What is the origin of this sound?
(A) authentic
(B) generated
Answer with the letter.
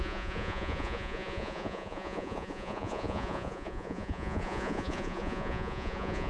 B